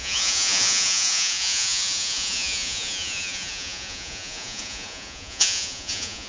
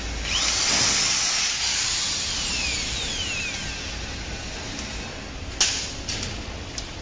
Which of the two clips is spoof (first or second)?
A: first